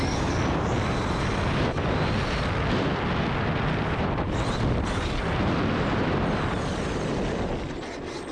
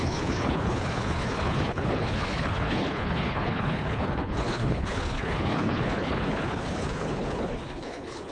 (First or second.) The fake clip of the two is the second